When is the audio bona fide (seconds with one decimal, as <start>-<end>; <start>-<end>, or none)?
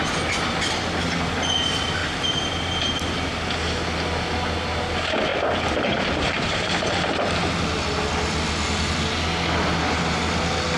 0.0-2.0; 3.0-5.3; 7.5-10.8